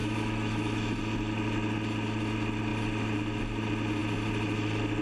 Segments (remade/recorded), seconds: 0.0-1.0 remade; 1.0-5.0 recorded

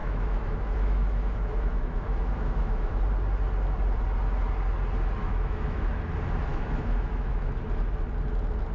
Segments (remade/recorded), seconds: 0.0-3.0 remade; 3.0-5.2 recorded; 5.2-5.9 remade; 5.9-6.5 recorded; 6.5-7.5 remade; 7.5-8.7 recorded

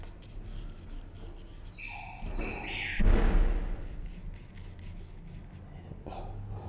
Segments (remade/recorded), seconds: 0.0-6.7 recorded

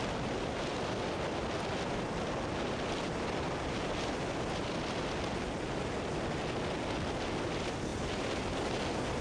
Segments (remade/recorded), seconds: 0.0-9.2 recorded

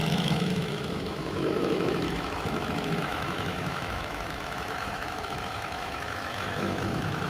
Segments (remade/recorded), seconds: 0.0-7.3 remade

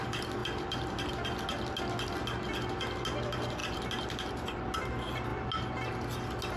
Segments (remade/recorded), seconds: 0.0-6.6 recorded

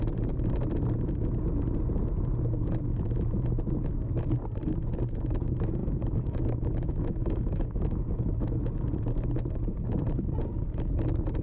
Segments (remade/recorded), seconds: 0.0-5.8 recorded; 5.8-8.6 remade; 8.6-11.4 recorded